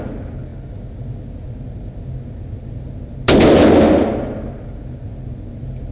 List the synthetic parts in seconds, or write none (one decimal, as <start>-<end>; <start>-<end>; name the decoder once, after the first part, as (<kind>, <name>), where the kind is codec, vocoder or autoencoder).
none